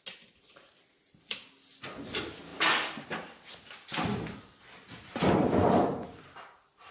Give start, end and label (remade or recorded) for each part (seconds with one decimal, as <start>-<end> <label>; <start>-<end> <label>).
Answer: 0.0-6.9 recorded

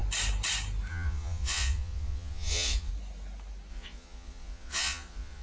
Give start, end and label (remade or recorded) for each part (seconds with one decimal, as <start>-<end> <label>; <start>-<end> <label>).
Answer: 0.0-0.9 recorded; 0.9-2.9 remade; 2.9-3.7 recorded; 3.7-5.4 remade

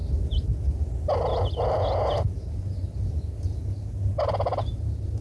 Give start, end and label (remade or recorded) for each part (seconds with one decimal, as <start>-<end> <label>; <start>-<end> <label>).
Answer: 0.0-5.2 recorded